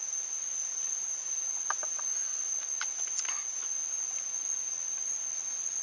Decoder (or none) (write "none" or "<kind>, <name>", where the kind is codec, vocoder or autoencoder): none